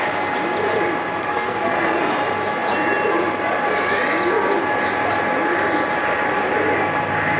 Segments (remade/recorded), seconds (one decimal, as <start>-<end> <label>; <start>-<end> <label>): 0.0-1.3 recorded; 1.3-2.0 remade; 2.0-7.4 recorded